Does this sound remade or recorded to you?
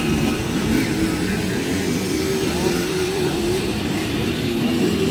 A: remade